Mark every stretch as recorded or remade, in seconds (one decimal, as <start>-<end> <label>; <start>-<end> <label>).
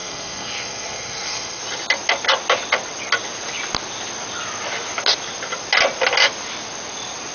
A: 0.0-1.6 remade; 1.6-7.3 recorded